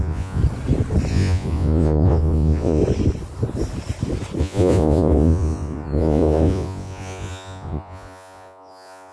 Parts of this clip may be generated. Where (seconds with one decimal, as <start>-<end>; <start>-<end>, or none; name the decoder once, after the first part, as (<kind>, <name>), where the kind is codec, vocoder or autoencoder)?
0.0-0.4 (vocoder, Vocos); 1.1-2.8; 4.4-9.1